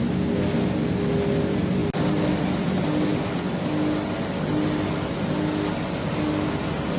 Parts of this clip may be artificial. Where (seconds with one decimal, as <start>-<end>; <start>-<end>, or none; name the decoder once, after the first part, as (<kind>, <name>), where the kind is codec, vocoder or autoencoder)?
none